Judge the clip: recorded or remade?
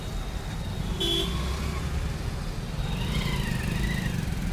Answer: recorded